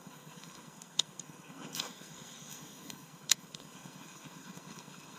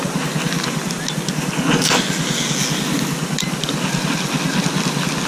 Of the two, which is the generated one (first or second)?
first